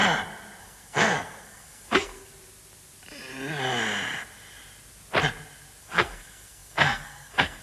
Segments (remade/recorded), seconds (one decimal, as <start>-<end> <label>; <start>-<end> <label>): 0.0-0.6 recorded; 0.6-2.3 remade; 2.3-5.8 recorded; 5.8-7.6 remade